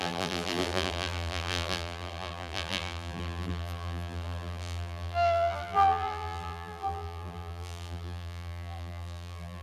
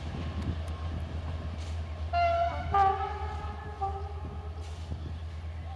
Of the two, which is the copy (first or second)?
first